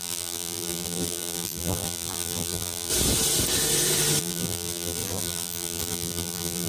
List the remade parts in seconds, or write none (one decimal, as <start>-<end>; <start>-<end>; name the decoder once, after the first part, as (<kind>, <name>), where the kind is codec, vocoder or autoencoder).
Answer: 0.0-2.9 (vocoder, BigVGAN v2); 4.2-6.7